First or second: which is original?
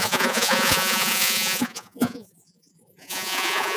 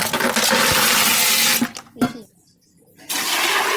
second